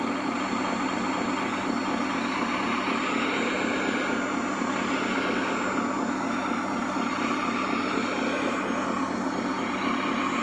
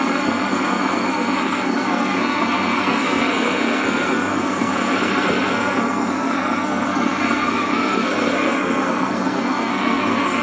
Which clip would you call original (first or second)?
first